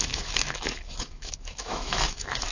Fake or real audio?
fake